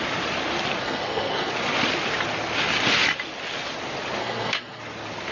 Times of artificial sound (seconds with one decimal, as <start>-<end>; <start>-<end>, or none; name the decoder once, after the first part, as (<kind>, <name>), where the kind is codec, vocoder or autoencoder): 0.8-1.5 (codec, SNAC); 4.2-4.8